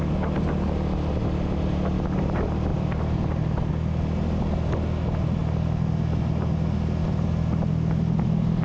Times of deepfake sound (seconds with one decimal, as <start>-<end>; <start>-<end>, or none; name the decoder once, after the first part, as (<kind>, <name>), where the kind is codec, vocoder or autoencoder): none